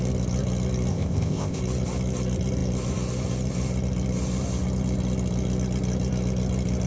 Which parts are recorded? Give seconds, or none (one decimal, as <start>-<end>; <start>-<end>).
0.0-0.9; 1.6-6.9